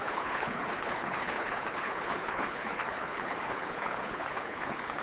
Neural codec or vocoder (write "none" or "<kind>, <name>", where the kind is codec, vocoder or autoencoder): codec, HILCodec